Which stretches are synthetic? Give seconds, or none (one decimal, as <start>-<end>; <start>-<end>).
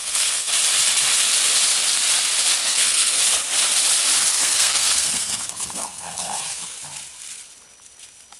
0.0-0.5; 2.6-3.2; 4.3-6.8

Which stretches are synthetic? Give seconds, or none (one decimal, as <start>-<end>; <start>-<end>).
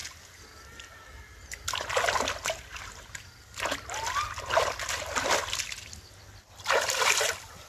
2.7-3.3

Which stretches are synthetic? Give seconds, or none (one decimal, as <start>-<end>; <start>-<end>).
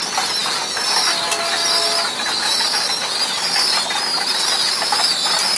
none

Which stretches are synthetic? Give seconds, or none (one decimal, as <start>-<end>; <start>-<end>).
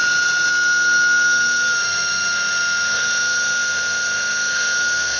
0.5-5.2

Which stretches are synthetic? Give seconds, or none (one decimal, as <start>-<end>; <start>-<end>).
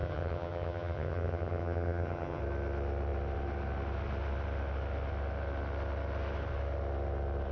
0.0-2.4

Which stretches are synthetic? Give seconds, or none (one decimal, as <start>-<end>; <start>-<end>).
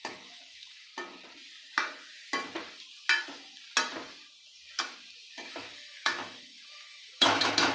0.0-0.9; 5.5-7.7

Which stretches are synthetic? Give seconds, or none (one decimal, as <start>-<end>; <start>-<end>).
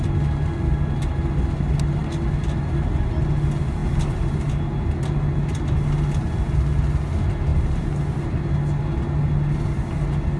none